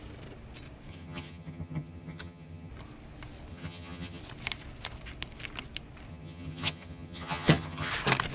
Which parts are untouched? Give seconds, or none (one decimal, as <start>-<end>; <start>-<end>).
0.0-0.9; 2.7-3.5; 4.2-6.1; 7.9-8.3